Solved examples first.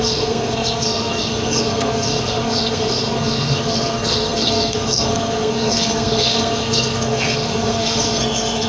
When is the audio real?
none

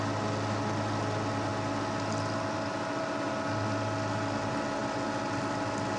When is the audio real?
0.0-6.0

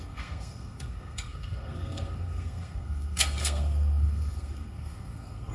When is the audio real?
none